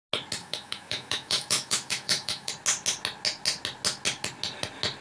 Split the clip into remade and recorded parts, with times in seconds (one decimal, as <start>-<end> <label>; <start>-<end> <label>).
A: 0.0-0.4 recorded; 0.4-2.5 remade; 2.5-5.0 recorded